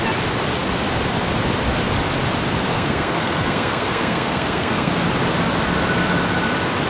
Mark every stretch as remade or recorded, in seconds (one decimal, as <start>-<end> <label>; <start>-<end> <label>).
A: 0.0-2.7 recorded; 2.7-4.9 remade; 4.9-6.9 recorded

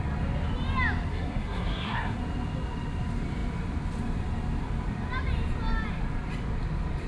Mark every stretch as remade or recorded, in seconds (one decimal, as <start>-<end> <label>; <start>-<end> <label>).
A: 0.0-1.1 recorded; 1.1-2.2 remade; 2.2-7.1 recorded